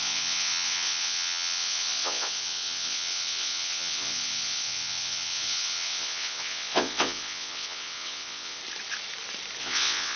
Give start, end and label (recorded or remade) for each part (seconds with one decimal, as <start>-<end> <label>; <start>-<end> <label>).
0.0-8.6 remade; 8.6-9.6 recorded; 9.6-10.2 remade